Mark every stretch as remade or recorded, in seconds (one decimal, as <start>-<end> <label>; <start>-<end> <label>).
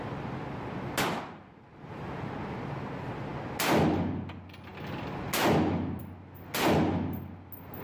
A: 0.0-7.8 recorded